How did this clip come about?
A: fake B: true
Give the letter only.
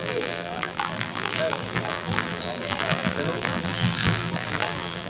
A